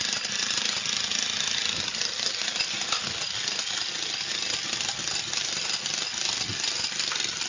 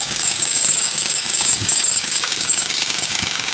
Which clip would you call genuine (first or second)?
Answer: first